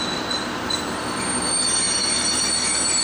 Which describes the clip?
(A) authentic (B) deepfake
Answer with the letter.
A